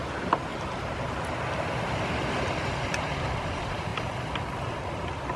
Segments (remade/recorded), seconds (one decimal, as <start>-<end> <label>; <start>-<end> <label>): 0.0-5.4 recorded